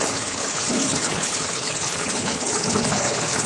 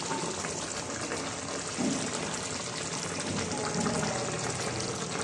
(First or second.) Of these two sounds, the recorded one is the second